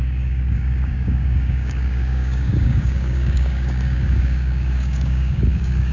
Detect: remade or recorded remade